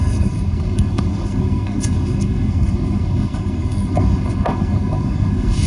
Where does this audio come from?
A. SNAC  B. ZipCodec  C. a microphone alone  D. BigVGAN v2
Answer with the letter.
A